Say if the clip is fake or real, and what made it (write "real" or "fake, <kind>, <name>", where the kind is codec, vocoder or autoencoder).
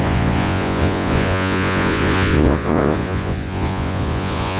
fake, vocoder, Vocos